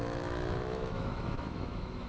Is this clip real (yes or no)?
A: no